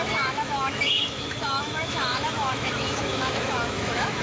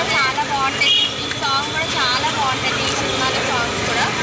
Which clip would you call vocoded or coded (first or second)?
first